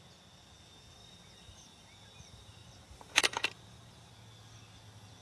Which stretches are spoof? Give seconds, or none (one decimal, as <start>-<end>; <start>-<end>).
1.0-4.1